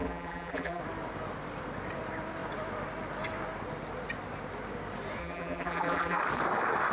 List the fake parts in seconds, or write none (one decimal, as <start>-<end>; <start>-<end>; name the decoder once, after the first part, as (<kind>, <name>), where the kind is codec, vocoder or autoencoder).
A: 0.0-0.8 (vocoder, BigVGAN v2); 5.2-6.2